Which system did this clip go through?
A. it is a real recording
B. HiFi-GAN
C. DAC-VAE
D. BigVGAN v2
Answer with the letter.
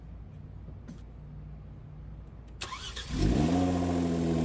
A